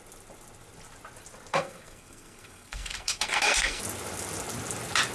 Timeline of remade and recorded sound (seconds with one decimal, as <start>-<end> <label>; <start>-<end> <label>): 0.0-1.5 recorded; 1.5-3.8 remade; 3.8-5.1 recorded

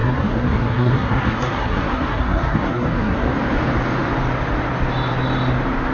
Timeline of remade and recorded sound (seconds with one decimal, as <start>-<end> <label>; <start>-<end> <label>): 0.0-3.3 remade; 3.3-5.9 recorded

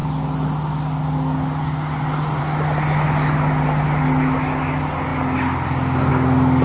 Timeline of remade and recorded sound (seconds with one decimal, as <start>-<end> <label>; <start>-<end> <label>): 0.0-6.6 recorded

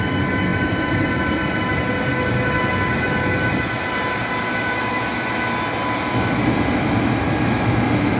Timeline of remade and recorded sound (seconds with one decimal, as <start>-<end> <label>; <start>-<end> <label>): 0.0-8.2 recorded